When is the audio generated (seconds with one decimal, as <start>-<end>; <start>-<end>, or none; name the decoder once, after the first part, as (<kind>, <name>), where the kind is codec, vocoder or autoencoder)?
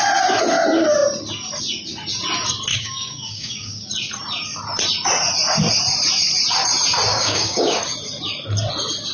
2.7-3.9 (codec, DAC); 7.1-7.8